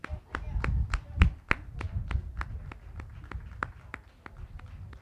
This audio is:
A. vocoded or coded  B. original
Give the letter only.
B